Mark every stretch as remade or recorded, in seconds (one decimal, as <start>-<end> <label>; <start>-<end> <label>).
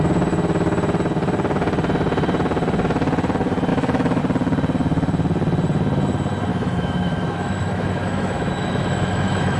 0.0-3.7 recorded; 3.7-4.2 remade; 4.2-6.5 recorded; 6.5-9.6 remade